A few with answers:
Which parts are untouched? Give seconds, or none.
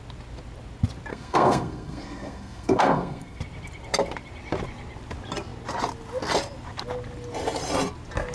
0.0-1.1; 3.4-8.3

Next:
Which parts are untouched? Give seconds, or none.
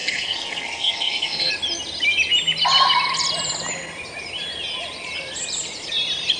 1.5-6.4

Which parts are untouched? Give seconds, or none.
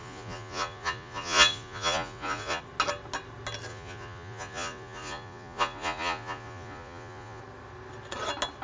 2.6-3.7; 7.4-8.6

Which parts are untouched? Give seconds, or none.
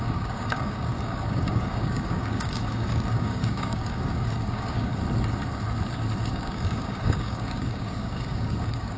4.9-6.3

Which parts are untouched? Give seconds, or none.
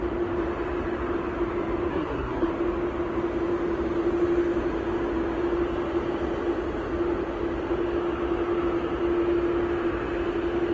0.0-1.9; 2.5-10.7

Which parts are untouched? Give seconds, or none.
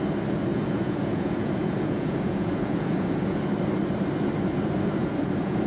0.0-0.5; 3.4-5.0